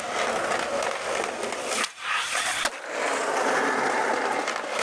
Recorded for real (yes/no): yes